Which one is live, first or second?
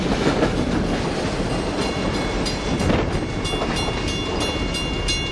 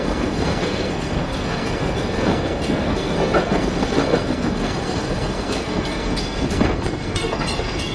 first